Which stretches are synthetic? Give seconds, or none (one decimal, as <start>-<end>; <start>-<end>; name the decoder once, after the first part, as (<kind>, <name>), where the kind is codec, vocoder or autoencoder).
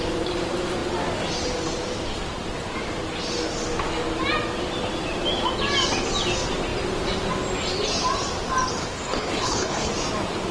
8.8-9.9 (codec, HILCodec)